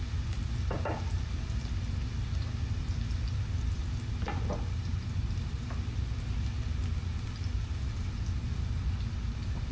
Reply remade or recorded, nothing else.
recorded